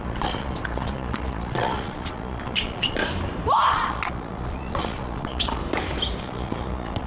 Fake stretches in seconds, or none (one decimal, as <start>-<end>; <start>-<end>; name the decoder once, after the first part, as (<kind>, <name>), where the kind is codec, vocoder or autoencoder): 0.0-3.0 (vocoder, Vocos); 3.7-5.6; 6.2-7.1